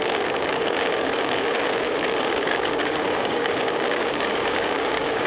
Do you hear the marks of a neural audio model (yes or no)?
yes